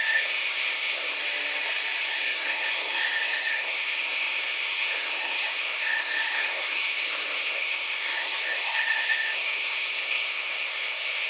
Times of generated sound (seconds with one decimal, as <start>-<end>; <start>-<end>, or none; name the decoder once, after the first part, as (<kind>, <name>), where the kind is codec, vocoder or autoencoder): 0.0-1.2 (codec, SNAC); 2.0-11.3